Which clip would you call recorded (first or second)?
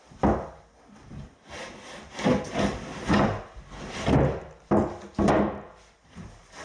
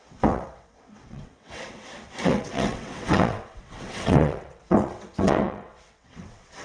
first